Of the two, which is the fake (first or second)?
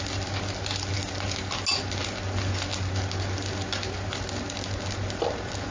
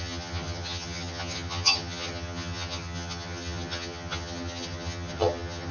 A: second